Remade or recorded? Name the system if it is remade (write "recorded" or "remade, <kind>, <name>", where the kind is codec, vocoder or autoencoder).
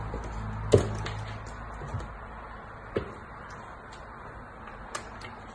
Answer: recorded